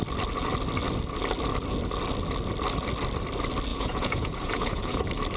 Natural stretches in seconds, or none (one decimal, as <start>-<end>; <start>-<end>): 0.0-3.7; 5.0-5.4